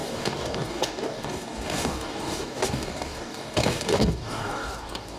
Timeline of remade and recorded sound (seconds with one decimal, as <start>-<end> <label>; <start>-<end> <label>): 0.0-5.2 remade